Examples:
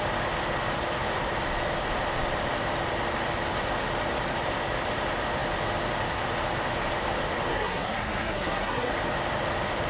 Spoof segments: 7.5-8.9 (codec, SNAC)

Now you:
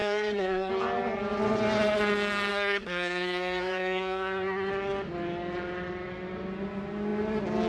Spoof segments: 0.0-0.7 (codec, SNAC); 2.5-4.7

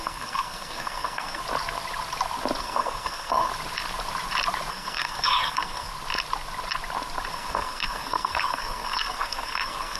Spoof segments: 0.0-1.4 (codec, SNAC); 2.6-3.5; 4.7-5.9; 7.3-10.0

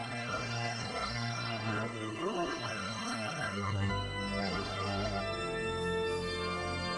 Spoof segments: 0.0-3.9 (codec, SNAC); 4.4-5.2

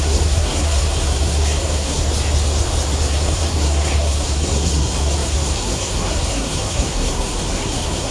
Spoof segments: 0.0-2.0 (codec, SNAC); 3.1-8.1